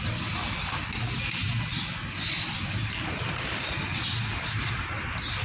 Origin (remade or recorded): recorded